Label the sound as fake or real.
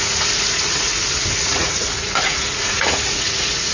fake